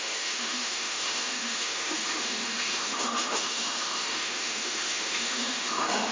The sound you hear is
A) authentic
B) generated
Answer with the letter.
B